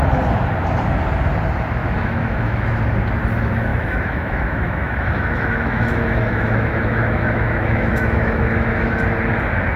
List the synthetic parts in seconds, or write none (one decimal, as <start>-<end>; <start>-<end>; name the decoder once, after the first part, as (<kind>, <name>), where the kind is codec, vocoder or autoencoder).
1.8-2.8 (autoencoder, DAC-VAE); 3.7-8.9